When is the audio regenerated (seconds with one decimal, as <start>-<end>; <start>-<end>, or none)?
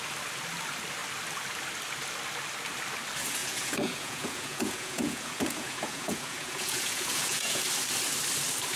3.4-7.6